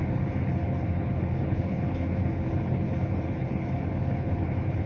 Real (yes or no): no